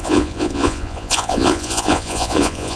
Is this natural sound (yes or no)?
no